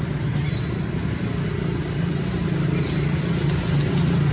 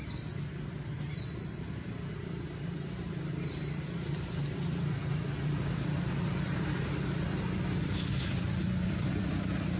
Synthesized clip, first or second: second